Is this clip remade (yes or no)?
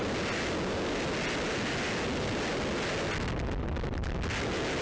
no